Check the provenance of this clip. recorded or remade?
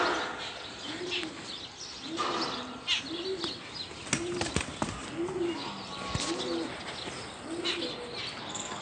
recorded